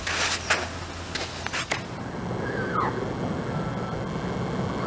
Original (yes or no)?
yes